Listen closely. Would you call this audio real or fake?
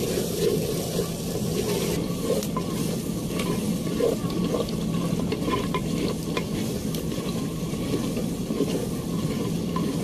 real